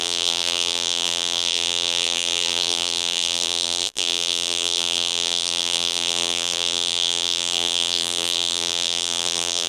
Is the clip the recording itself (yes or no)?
no